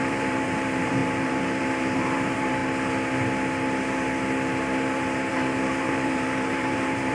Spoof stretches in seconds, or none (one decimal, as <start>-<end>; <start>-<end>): 0.0-2.6; 5.3-7.1